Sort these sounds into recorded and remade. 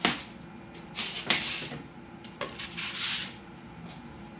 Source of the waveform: recorded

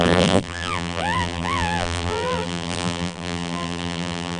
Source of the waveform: remade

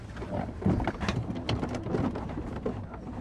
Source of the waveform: recorded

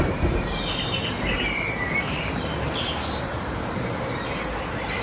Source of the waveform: remade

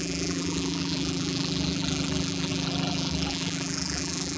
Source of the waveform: remade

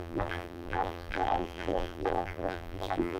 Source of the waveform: remade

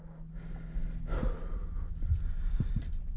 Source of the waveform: recorded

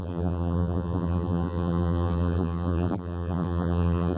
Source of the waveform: remade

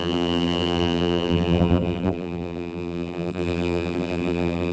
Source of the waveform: remade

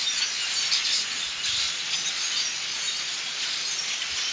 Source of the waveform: recorded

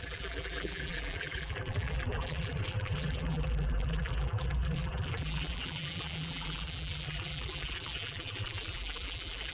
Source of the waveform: remade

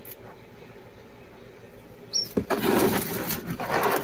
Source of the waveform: recorded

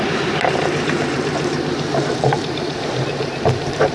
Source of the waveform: remade